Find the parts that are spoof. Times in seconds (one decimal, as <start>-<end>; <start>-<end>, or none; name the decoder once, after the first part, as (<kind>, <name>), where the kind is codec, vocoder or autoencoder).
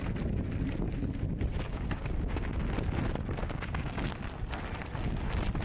1.5-2.4 (codec, DAC); 3.4-4.1